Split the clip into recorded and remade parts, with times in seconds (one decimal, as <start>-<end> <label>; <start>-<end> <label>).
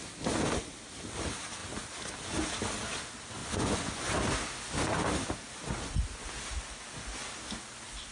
0.0-3.4 recorded; 3.4-4.1 remade; 4.1-8.1 recorded